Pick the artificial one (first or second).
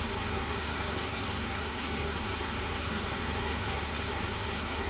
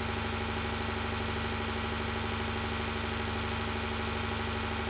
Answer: first